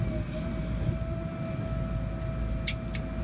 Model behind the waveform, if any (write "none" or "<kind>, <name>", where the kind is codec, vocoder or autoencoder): none